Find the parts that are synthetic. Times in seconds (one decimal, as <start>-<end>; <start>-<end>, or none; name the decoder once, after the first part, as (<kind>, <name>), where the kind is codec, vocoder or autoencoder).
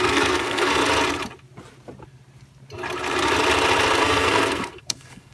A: 0.0-0.8 (codec, SNAC); 4.0-5.3